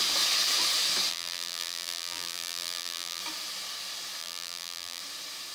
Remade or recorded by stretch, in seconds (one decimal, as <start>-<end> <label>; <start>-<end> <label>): 0.0-1.1 recorded; 1.1-3.2 remade; 3.2-4.2 recorded; 4.2-5.0 remade; 5.0-5.5 recorded